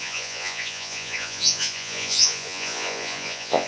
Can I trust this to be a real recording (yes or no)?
no